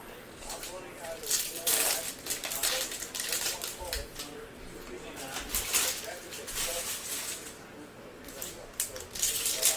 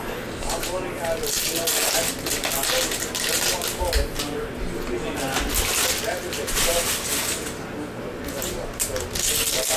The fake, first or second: first